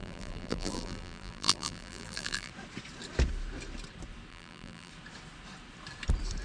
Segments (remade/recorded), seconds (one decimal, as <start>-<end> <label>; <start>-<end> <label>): 0.0-2.5 remade; 2.5-4.3 recorded; 4.3-4.9 remade; 4.9-6.4 recorded